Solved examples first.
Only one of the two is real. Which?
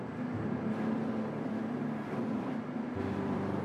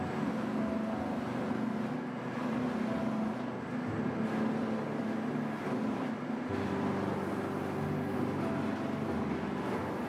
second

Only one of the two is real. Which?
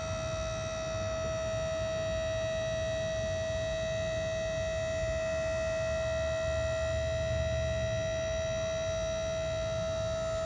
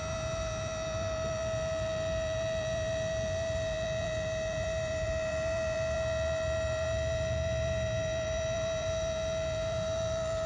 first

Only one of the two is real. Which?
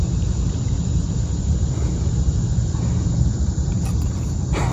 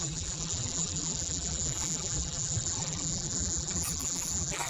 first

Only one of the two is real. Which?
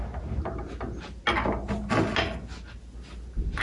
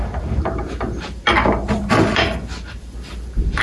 first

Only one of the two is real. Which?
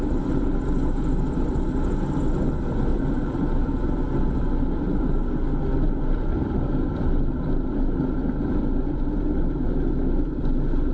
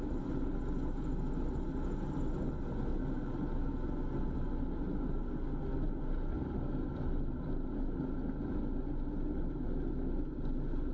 second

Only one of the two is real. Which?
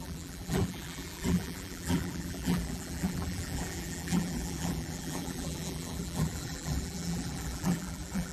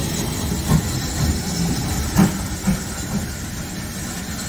second